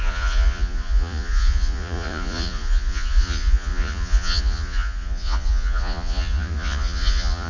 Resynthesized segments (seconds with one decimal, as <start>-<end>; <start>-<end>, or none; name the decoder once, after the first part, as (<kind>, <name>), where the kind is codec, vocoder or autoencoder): 0.0-7.5 (vocoder, Vocos)